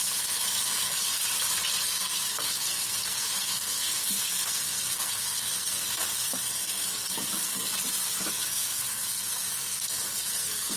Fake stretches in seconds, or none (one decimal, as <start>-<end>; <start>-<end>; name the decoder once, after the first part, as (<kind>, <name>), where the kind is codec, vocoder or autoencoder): 0.0-1.2 (codec, SNAC); 1.8-7.7; 8.3-10.8